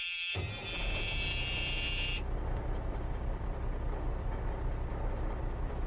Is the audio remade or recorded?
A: remade